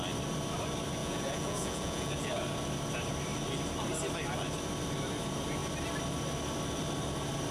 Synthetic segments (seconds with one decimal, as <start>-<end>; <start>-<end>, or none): 1.0-2.3